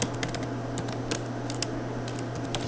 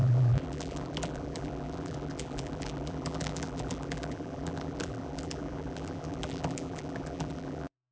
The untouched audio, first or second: first